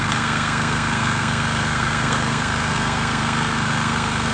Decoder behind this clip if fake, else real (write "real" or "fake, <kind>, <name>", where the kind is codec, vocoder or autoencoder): fake, codec, SNAC